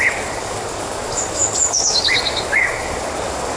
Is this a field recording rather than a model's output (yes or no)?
no